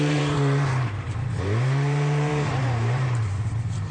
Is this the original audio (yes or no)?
no